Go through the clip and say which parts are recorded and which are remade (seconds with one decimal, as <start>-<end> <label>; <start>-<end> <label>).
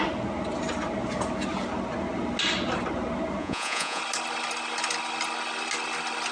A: 0.0-3.4 recorded; 3.4-4.0 remade; 4.0-6.3 recorded